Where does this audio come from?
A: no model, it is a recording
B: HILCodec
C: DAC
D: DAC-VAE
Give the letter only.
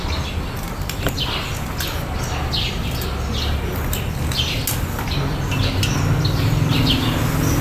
A